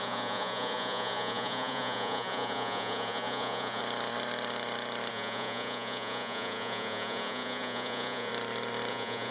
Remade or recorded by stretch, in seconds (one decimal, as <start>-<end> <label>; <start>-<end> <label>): 0.0-3.8 remade; 3.8-5.1 recorded; 5.1-8.3 remade; 8.3-8.9 recorded; 8.9-9.3 remade